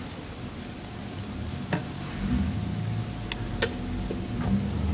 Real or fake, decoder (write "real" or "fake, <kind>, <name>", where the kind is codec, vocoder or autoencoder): real